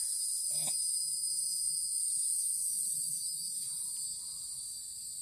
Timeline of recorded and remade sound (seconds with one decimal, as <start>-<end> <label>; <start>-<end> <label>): 0.0-0.4 recorded; 0.4-3.5 remade; 3.5-5.2 recorded

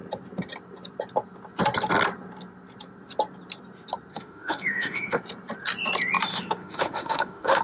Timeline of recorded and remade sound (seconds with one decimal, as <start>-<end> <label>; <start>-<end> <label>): 0.0-4.1 recorded; 4.1-5.2 remade; 5.2-6.3 recorded; 6.3-7.6 remade

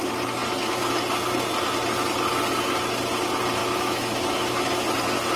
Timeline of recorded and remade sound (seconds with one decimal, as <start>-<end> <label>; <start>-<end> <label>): 0.0-3.6 recorded; 3.6-4.7 remade; 4.7-5.4 recorded

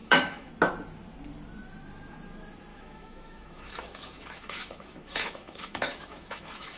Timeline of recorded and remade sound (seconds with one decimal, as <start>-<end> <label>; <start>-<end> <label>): 0.0-0.5 remade; 0.5-2.7 recorded; 2.7-6.8 remade

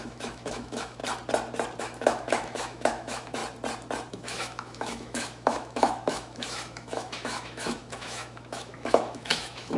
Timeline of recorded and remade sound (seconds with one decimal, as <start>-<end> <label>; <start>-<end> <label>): 0.0-1.0 remade; 1.0-1.8 recorded; 1.8-3.4 remade; 3.4-4.1 recorded; 4.1-9.8 remade

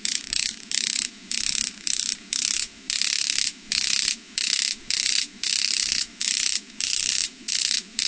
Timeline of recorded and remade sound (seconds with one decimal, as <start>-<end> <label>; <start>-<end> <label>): 0.0-8.1 remade

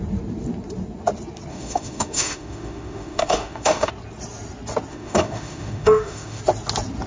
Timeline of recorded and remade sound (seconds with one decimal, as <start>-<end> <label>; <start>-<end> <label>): 0.0-1.5 recorded; 1.5-3.9 remade; 3.9-4.9 recorded; 4.9-6.4 remade; 6.4-7.1 recorded

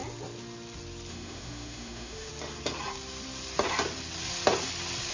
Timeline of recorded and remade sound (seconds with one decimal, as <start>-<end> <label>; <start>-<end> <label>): 0.0-1.1 recorded; 1.1-2.3 remade; 2.3-5.1 recorded